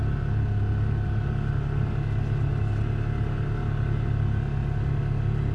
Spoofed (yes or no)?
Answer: no